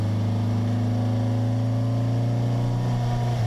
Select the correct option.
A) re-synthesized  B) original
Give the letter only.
B